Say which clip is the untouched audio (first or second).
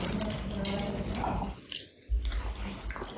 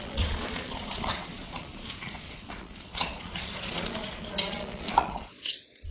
first